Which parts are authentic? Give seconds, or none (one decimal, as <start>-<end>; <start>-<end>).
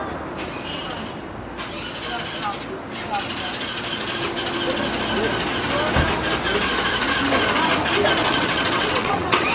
0.0-8.2